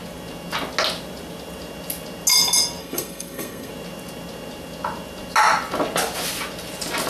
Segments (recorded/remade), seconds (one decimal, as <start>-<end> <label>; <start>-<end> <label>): 0.0-2.8 recorded; 2.8-3.7 remade; 3.7-7.1 recorded